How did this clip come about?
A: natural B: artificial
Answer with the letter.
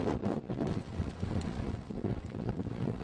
B